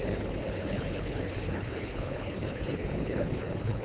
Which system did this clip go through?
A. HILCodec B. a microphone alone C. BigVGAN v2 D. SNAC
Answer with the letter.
A